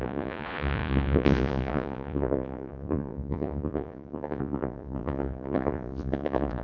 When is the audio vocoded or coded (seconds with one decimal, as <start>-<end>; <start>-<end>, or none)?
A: 0.0-6.6